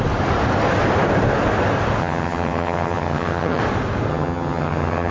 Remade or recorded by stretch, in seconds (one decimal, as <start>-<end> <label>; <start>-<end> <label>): 0.0-2.0 recorded; 2.0-3.6 remade; 3.6-4.1 recorded; 4.1-5.1 remade